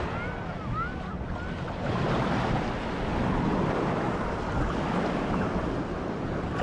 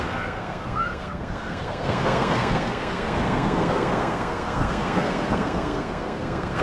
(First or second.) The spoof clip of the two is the second